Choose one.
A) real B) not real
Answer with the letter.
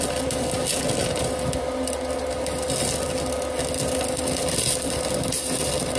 A